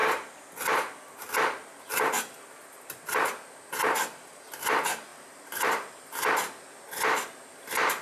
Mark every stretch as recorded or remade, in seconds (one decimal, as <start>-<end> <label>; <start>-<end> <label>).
0.0-5.1 recorded; 5.1-6.0 remade; 6.0-8.0 recorded